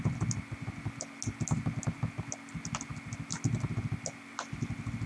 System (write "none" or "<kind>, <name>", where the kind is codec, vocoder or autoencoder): none